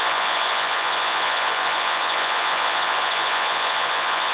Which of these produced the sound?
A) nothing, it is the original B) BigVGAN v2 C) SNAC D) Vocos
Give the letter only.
D